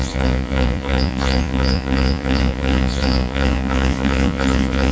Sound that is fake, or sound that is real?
fake